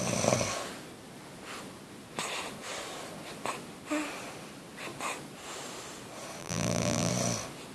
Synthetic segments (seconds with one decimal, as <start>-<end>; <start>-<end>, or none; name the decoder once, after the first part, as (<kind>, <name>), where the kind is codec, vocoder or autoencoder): 6.4-7.1 (vocoder, BigVGAN v2)